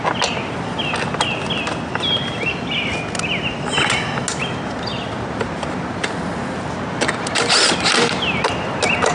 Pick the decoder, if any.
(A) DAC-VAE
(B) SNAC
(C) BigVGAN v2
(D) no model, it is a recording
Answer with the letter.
D